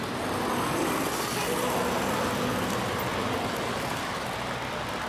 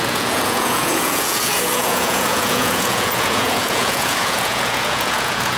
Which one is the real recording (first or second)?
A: first